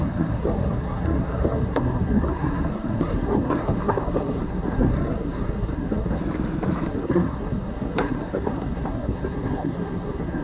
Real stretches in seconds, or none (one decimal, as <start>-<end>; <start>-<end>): 6.2-6.9